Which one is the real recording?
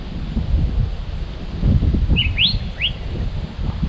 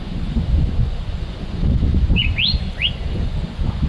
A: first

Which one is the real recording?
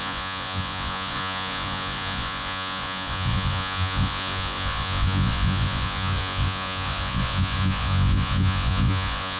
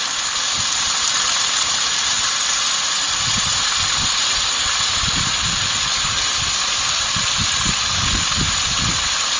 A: second